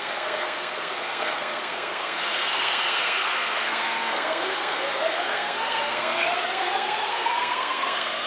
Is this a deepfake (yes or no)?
yes